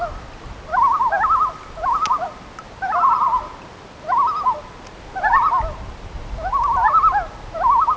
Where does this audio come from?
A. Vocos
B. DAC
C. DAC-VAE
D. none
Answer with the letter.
D